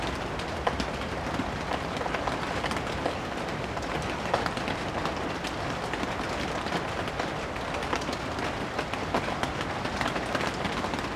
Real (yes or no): yes